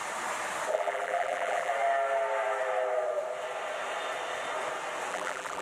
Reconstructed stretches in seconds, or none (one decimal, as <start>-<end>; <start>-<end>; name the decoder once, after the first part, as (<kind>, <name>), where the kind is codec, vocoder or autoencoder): 0.7-1.7 (vocoder, BigVGAN v2); 5.1-5.6